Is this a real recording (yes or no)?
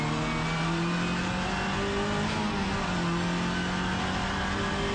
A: yes